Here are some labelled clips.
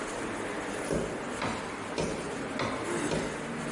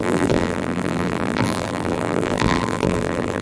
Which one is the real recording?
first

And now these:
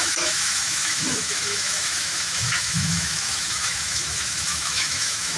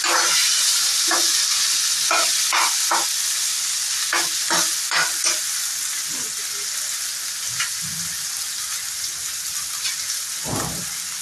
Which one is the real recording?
second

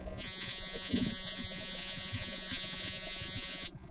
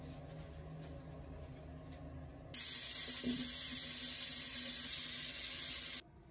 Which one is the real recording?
second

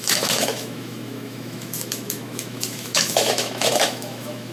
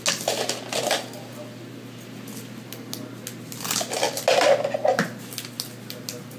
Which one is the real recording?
second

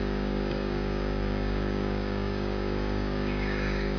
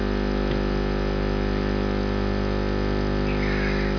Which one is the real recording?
second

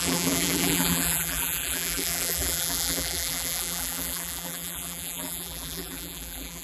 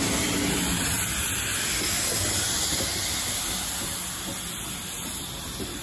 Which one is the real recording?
second